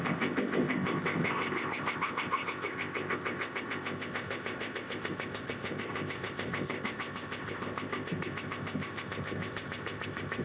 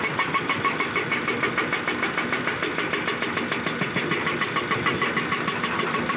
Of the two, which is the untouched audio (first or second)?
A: second